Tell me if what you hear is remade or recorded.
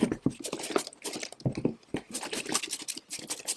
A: recorded